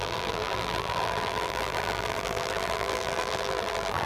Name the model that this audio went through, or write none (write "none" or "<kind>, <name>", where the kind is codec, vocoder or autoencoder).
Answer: vocoder, BigVGAN v2